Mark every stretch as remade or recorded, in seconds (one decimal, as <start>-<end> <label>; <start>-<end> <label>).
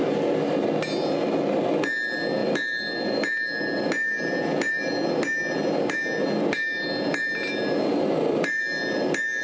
0.0-7.9 recorded; 7.9-8.6 remade; 8.6-9.4 recorded